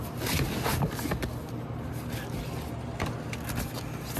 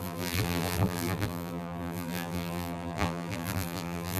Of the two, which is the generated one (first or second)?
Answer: second